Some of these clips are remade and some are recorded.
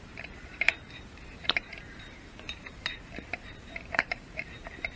remade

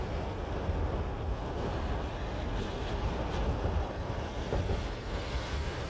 recorded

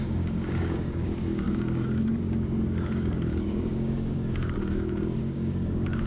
remade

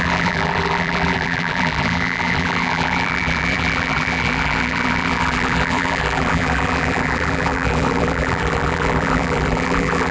remade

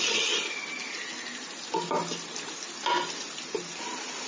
recorded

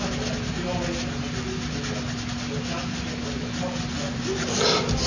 recorded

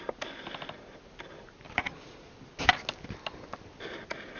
recorded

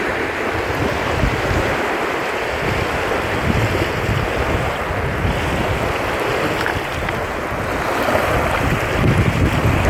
recorded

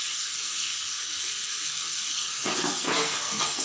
remade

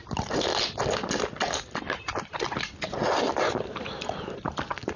recorded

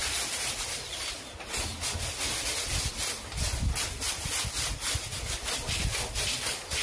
recorded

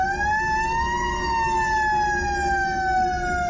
recorded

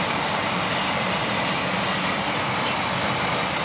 recorded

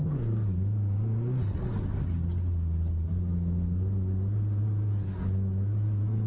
recorded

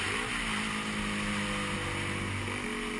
recorded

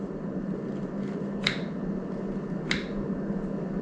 recorded